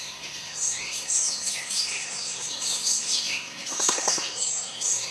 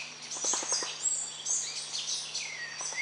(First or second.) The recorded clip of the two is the second